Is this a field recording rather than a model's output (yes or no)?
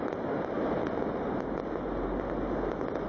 yes